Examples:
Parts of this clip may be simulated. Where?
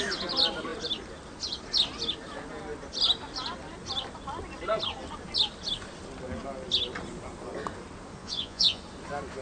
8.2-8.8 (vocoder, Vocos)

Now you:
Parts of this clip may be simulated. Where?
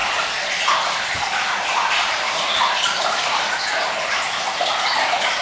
none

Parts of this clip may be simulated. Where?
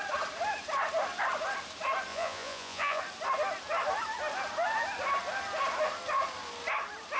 2.1-3.0 (vocoder, Vocos)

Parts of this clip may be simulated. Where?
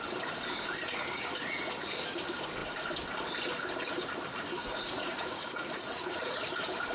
4.7-6.4 (vocoder, Vocos)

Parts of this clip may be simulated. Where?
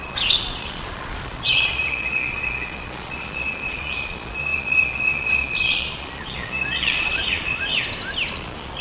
0.0-7.7 (vocoder, Vocos); 8.3-8.8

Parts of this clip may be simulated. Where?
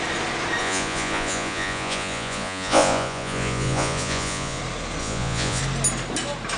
0.6-4.6 (vocoder, Vocos); 5.0-5.6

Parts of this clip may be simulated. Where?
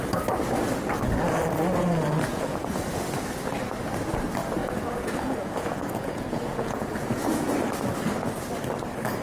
2.3-2.9 (vocoder, Vocos); 4.6-7.5